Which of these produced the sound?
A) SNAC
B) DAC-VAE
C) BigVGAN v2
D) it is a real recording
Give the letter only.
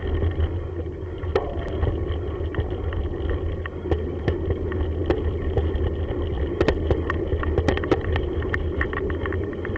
D